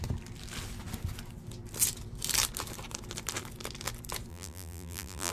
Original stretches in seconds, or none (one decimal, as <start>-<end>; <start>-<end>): 0.0-4.3